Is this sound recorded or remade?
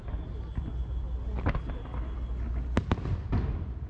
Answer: recorded